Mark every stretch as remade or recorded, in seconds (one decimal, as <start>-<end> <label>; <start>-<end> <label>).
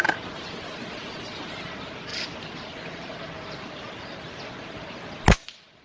0.0-5.8 recorded